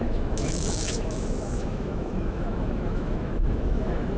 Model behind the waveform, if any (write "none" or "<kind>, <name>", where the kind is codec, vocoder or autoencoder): autoencoder, DAC-VAE